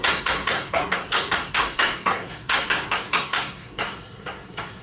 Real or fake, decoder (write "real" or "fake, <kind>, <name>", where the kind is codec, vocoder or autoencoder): fake, codec, SNAC